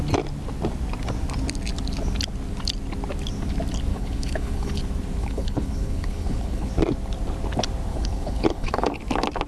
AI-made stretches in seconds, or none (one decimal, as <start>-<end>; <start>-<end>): 3.9-4.8; 5.2-6.7; 7.9-9.0